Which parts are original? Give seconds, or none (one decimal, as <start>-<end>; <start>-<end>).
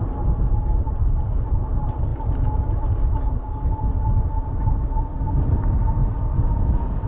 0.0-7.1